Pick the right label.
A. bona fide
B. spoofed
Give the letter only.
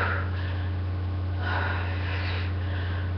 A